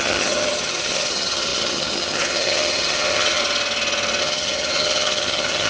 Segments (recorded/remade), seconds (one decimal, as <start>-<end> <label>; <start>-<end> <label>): 0.0-3.4 remade; 3.4-4.2 recorded; 4.2-5.7 remade